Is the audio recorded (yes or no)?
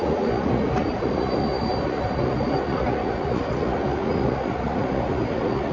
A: no